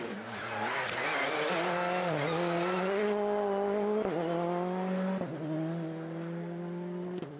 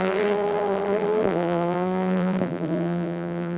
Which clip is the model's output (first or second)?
second